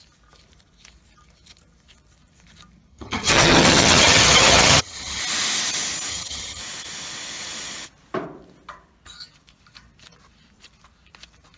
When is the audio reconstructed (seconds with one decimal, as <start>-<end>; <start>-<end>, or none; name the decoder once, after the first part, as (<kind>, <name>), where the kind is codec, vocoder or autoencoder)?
2.9-5.2 (vocoder, HiFi-GAN); 6.1-6.6